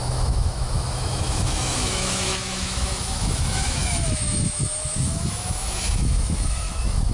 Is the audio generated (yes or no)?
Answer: yes